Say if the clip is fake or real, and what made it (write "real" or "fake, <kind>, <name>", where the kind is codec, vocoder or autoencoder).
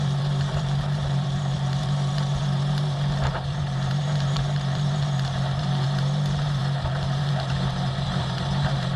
fake, vocoder, BigVGAN v2